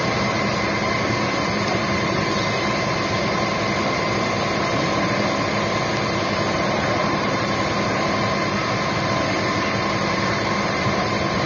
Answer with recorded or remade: recorded